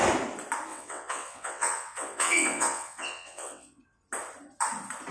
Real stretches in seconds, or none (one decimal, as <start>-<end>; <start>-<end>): 0.0-0.7; 3.8-5.1